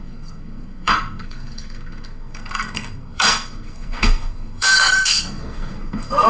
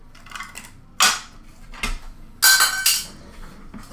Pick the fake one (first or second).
first